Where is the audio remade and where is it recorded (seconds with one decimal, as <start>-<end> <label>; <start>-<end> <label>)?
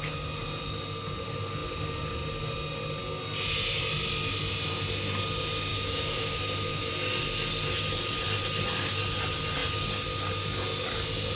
0.0-5.7 recorded; 5.7-6.9 remade; 6.9-11.4 recorded